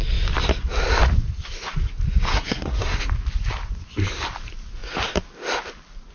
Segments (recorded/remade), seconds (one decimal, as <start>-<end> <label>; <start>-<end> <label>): 0.0-2.3 recorded; 2.3-3.0 remade; 3.0-6.1 recorded